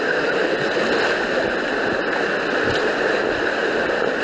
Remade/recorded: recorded